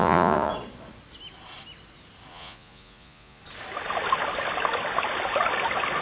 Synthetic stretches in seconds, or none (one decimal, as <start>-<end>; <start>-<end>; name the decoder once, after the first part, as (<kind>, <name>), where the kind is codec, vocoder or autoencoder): 0.0-0.5 (vocoder, Vocos); 2.3-3.4